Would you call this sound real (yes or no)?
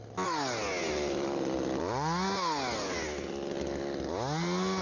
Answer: yes